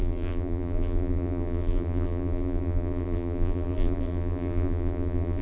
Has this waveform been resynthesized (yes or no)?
yes